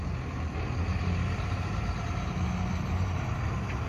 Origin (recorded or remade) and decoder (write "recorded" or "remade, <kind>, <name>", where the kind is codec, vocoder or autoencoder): recorded